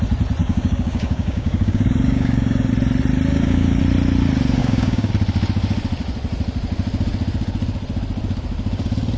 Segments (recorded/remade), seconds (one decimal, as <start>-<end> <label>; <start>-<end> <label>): 0.0-0.4 recorded; 0.4-2.7 remade; 2.7-3.3 recorded; 3.3-3.8 remade; 3.8-4.6 recorded; 4.6-5.1 remade; 5.1-9.2 recorded

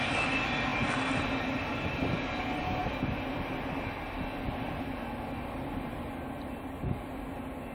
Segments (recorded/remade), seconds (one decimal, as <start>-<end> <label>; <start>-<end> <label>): 0.0-7.7 recorded